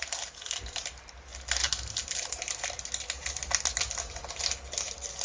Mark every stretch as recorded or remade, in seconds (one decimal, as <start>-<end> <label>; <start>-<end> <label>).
0.0-5.2 recorded